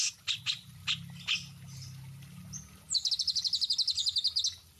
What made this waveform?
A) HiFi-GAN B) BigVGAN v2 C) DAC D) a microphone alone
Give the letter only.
D